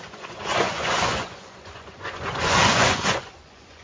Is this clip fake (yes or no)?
yes